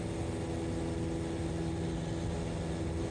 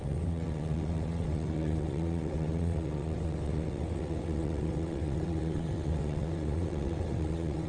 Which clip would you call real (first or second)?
first